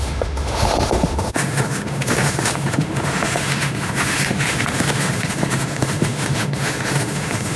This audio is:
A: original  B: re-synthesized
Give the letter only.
B